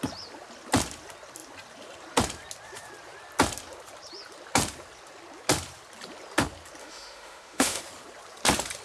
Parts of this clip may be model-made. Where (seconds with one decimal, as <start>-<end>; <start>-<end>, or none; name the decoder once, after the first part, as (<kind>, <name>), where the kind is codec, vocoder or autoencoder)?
6.8-7.8 (autoencoder, DAC-VAE)